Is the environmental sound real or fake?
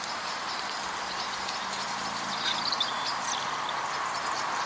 real